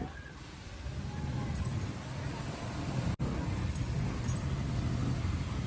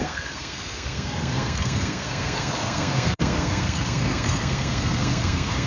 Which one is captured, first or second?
first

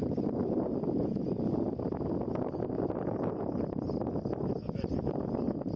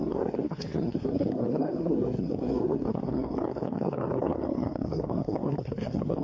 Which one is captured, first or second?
first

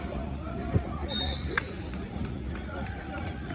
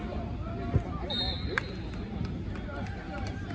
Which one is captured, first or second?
second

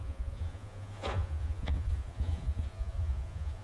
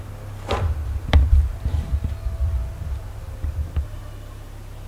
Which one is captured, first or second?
second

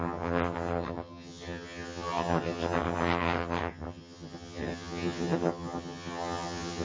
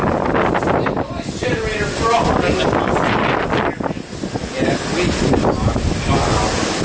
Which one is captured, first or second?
second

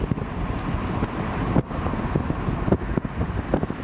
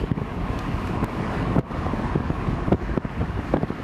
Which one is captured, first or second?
first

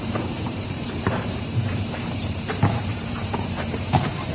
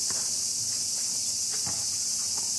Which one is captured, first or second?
second